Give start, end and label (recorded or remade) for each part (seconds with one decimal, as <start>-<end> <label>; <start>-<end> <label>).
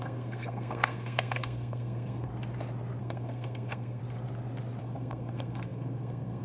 0.0-2.3 remade; 2.3-3.0 recorded; 3.0-4.0 remade; 4.0-4.8 recorded; 4.8-6.4 remade